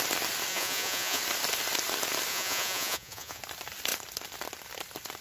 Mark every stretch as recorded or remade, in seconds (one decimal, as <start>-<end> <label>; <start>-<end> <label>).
0.0-0.5 recorded; 0.5-1.2 remade; 1.2-2.3 recorded; 2.3-3.4 remade; 3.4-5.2 recorded